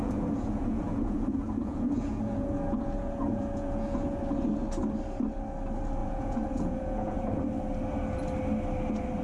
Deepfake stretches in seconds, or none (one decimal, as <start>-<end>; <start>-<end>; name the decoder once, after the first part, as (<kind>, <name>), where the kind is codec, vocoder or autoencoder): 0.0-4.2 (vocoder, Vocos); 6.0-7.4